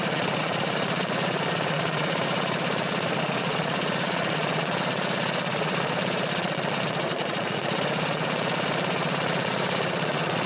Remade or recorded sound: remade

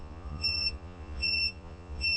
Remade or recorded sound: remade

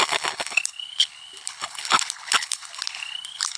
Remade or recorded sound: remade